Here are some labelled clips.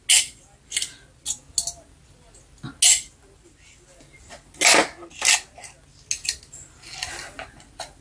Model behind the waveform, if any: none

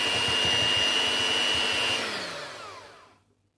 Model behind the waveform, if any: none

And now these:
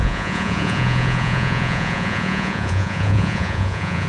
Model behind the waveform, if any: vocoder, Vocos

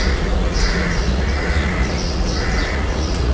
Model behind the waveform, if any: vocoder, Vocos